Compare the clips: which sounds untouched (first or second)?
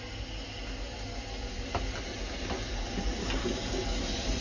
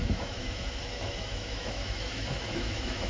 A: first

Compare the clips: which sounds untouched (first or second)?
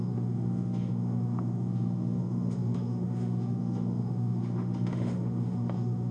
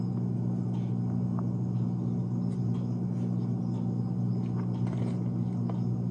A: second